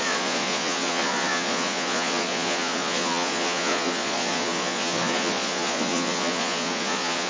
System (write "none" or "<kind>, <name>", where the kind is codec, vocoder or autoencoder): vocoder, Vocos